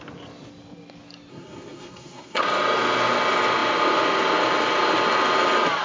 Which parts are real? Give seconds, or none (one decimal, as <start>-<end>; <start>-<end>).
0.0-1.3; 2.4-5.8